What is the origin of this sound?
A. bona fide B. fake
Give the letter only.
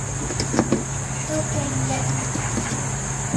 A